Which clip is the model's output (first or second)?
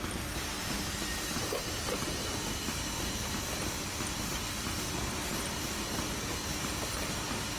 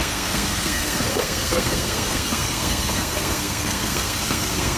second